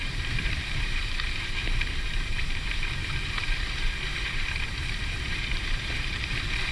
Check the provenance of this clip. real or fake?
fake